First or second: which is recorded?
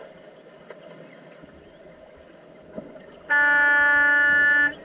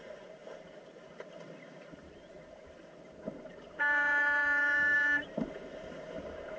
first